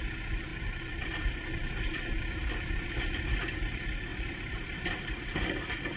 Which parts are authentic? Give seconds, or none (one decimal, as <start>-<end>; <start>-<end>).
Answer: 0.0-0.5; 2.9-4.1; 5.5-6.0